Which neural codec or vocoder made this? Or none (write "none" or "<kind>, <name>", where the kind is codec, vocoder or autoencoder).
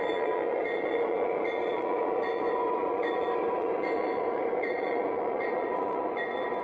vocoder, Vocos